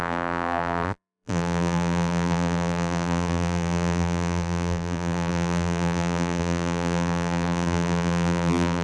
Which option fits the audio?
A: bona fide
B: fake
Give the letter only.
B